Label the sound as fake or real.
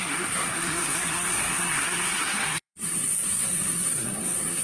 fake